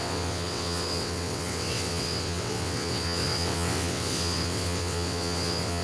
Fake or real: fake